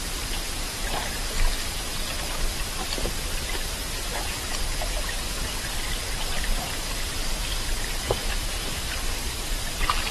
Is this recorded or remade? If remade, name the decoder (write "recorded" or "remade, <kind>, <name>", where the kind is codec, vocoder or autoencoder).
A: remade, vocoder, BigVGAN v2